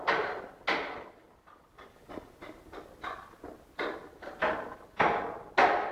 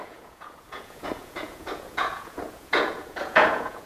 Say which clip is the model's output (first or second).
second